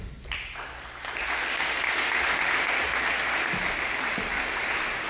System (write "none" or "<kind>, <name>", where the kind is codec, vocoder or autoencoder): none